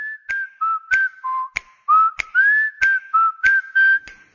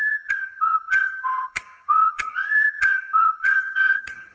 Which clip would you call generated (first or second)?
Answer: second